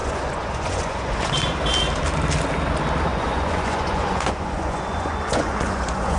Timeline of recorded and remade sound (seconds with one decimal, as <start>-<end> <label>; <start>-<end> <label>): 0.0-1.3 remade; 1.3-3.1 recorded; 3.1-6.2 remade

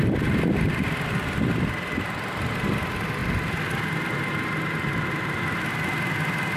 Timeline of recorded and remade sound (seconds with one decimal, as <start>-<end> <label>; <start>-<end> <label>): 0.0-6.6 recorded

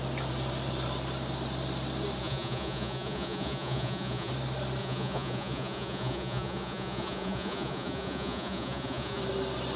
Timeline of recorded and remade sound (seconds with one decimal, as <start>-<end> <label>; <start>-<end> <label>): 0.0-2.2 recorded; 2.2-4.3 remade; 4.3-4.8 recorded; 4.8-9.2 remade; 9.2-9.8 recorded

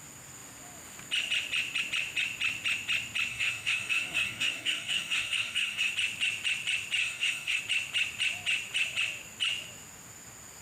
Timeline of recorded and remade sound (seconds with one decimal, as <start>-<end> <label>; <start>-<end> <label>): 0.0-3.3 recorded; 3.3-5.9 remade; 5.9-7.0 recorded; 7.0-7.6 remade; 7.6-10.6 recorded